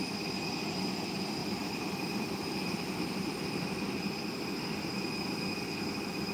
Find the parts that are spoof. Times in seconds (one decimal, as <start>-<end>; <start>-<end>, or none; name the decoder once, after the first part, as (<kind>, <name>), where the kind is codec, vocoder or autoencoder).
1.4-3.9 (vocoder, BigVGAN v2)